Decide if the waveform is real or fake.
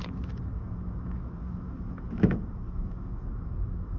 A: fake